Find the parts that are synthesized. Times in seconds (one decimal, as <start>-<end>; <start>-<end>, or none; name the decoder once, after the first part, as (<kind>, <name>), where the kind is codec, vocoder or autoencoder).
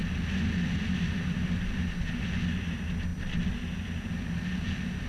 none